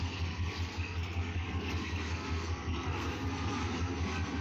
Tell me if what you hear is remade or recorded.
remade